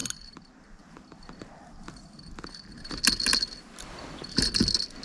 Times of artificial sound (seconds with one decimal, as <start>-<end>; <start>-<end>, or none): none